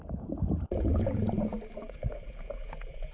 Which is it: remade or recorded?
remade